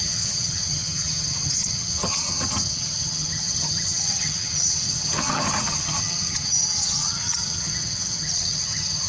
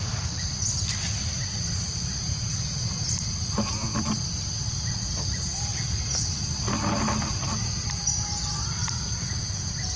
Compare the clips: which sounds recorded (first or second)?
second